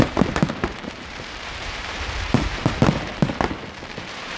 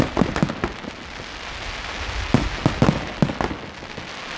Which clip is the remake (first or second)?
first